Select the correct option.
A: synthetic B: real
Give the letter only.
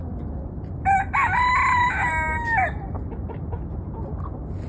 B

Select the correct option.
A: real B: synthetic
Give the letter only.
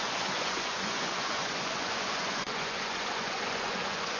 B